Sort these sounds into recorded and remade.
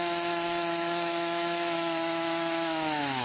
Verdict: remade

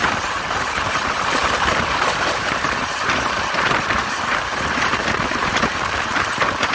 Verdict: remade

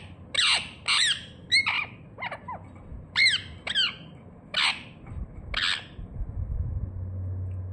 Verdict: recorded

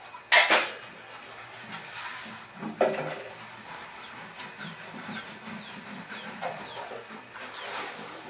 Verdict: recorded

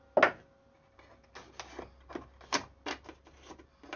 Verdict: recorded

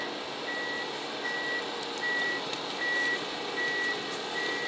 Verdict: recorded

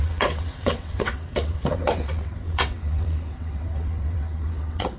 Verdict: remade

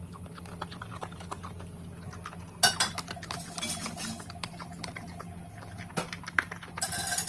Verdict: recorded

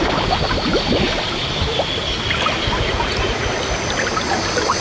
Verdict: recorded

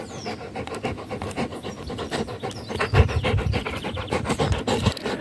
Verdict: recorded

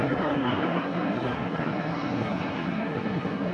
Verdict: remade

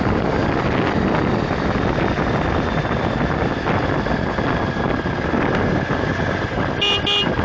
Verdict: recorded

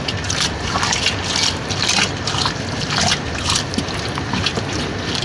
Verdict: recorded